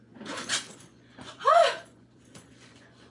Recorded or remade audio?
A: remade